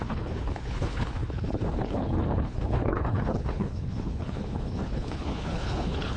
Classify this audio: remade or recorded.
remade